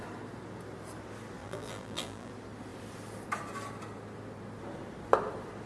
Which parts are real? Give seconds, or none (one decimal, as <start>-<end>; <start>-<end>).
0.0-1.4; 2.3-5.7